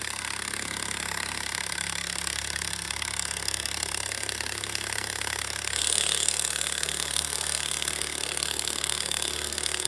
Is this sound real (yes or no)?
no